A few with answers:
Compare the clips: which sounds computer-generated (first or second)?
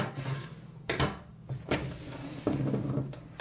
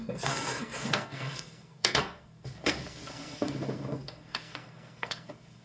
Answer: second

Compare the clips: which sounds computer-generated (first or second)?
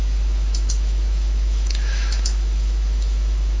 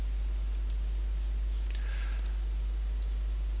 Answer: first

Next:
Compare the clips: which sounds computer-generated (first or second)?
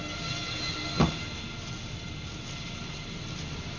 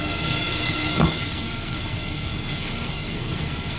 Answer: second